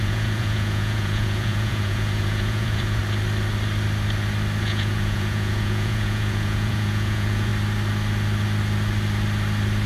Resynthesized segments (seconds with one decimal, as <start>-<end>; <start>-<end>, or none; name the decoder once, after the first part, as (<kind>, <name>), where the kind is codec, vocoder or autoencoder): 0.0-3.0 (vocoder, Vocos); 4.6-7.5